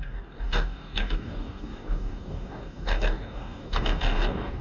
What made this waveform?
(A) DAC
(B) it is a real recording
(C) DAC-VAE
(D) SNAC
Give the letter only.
A